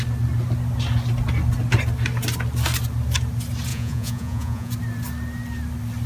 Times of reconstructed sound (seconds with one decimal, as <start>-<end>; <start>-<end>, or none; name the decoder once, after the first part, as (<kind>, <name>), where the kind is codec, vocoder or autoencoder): 3.7-4.7 (vocoder, Vocos)